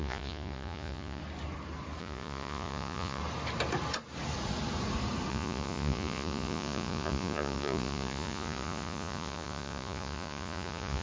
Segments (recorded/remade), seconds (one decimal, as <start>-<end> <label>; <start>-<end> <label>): 0.0-1.2 remade; 1.2-2.0 recorded; 2.0-3.2 remade; 3.2-5.3 recorded; 5.3-11.0 remade